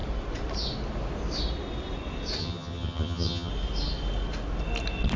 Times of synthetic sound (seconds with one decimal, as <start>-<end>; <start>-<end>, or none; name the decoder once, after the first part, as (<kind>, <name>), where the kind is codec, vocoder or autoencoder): 2.4-3.5 (vocoder, HiFi-GAN)